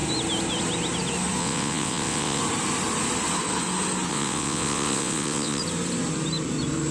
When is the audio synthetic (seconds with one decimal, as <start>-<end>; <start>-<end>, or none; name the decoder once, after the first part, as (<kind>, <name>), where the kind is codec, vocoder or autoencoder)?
1.4-2.4 (vocoder, WaveNeXt); 4.1-5.6